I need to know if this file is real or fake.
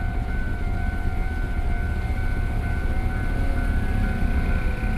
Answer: real